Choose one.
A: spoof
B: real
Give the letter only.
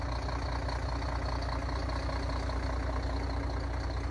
B